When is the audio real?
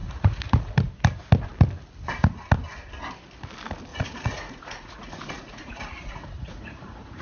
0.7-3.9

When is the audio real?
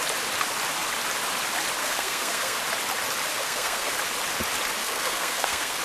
0.0-1.8; 2.6-3.3; 3.9-4.8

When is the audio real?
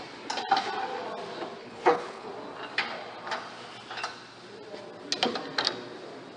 0.0-1.6; 2.3-6.4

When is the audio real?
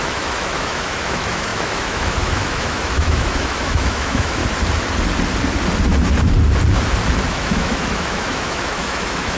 4.4-7.3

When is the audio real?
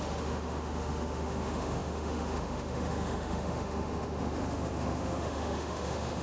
none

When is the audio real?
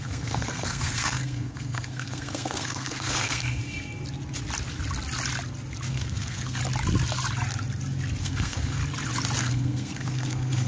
3.6-5.9; 6.6-8.2; 8.8-9.4